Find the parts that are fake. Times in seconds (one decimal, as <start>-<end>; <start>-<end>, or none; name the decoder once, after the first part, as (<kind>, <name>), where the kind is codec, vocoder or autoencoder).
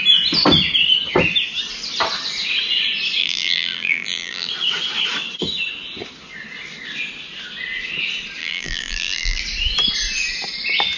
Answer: 3.2-4.5 (vocoder, BigVGAN v2); 8.4-9.4